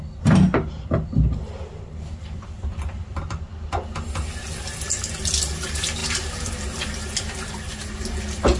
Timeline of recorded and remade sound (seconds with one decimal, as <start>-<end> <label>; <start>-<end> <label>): 0.0-3.5 remade; 3.5-4.6 recorded; 4.6-8.6 remade